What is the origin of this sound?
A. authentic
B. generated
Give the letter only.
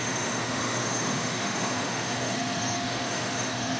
B